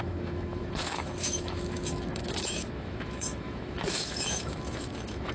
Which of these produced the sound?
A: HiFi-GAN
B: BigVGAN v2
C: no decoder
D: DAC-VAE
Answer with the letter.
D